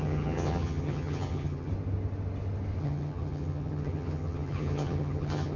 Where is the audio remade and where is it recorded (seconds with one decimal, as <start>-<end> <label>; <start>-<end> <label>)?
0.0-1.7 remade; 1.7-2.8 recorded; 2.8-5.6 remade